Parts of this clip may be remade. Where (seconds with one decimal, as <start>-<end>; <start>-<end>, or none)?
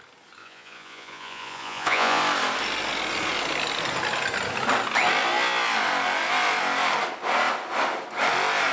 0.4-2.2